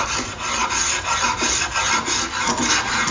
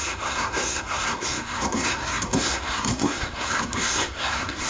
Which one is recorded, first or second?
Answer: first